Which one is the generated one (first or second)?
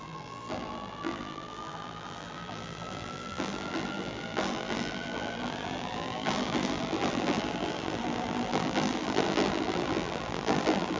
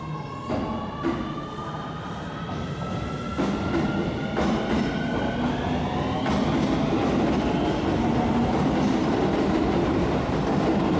first